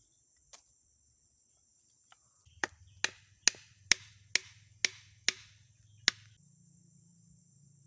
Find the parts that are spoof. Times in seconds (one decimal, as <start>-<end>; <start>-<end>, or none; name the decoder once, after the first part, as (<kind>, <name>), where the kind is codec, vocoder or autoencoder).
2.3-2.8 (vocoder, BigVGAN v2)